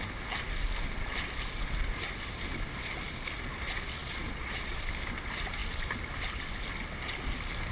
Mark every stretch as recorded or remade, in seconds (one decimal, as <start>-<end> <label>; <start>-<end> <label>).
0.0-4.0 recorded; 4.0-4.8 remade; 4.8-7.7 recorded